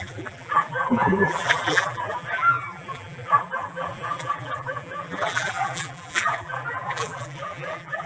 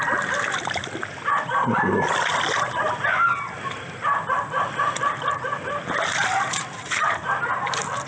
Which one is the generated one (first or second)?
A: first